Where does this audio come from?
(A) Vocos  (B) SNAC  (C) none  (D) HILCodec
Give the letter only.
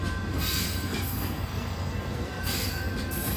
B